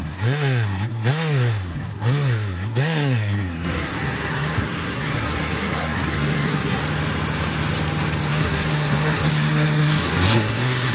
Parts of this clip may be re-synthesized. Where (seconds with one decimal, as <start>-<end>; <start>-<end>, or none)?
0.0-6.8; 8.3-10.9